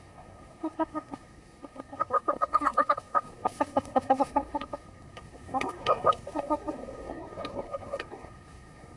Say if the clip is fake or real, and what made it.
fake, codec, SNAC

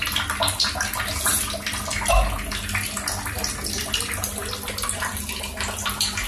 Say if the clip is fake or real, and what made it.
real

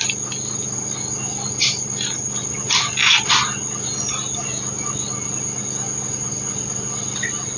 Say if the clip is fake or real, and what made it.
real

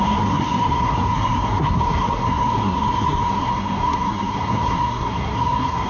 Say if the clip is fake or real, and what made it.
fake, codec, SNAC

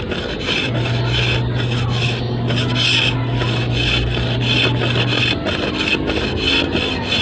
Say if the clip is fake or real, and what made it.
real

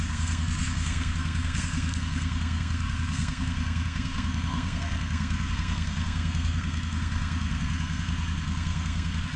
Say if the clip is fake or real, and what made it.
fake, codec, SNAC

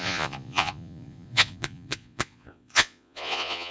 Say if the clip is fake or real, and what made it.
fake, vocoder, Vocos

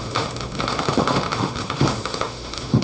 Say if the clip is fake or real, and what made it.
fake, autoencoder, DAC-VAE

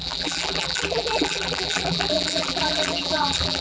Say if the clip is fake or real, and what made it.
fake, vocoder, BigVGAN v2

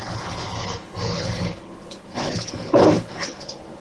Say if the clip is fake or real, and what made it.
fake, codec, HILCodec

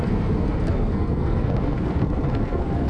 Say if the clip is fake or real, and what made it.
fake, codec, SNAC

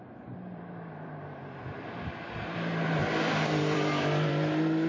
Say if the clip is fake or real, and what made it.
fake, vocoder, BigVGAN v2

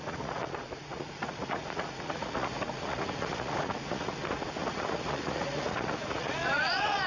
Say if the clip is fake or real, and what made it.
fake, vocoder, Vocos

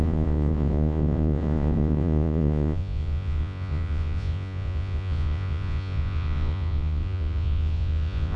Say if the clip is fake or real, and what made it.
fake, vocoder, Vocos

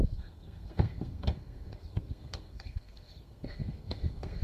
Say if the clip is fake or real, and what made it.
fake, codec, SNAC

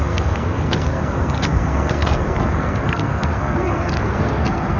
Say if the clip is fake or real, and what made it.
fake, codec, SNAC